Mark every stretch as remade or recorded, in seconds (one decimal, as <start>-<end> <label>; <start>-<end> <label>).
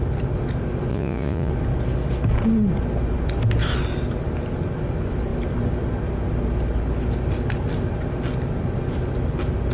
0.0-0.9 recorded; 0.9-1.5 remade; 1.5-9.7 recorded